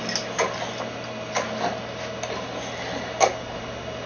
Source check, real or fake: real